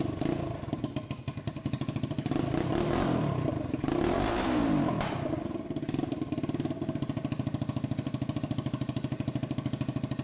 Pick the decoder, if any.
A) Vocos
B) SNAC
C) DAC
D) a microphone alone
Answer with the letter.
D